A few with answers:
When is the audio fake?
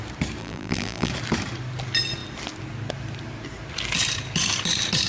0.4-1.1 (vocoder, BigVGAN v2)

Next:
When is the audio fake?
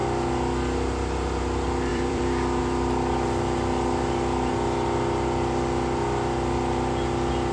1.9-2.6 (vocoder, BigVGAN v2)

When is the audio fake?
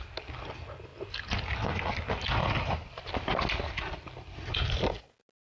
none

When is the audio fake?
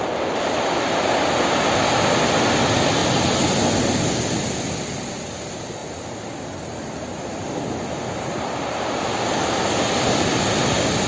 none